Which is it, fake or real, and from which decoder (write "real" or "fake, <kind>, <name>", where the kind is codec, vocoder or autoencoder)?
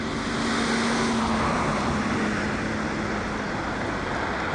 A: real